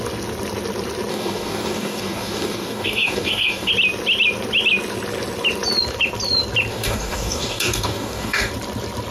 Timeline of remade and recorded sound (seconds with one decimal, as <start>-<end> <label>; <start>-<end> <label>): 0.0-1.1 recorded; 1.1-3.7 remade; 3.7-6.7 recorded; 6.7-8.5 remade; 8.5-9.1 recorded